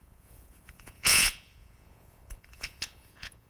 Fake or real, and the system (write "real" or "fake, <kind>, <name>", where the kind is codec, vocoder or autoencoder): fake, vocoder, Vocos